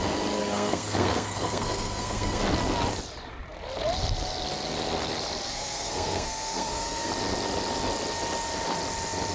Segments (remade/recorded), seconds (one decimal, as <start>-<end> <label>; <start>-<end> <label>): 0.0-0.4 recorded; 0.4-2.4 remade; 2.4-5.5 recorded; 5.5-7.1 remade; 7.1-9.3 recorded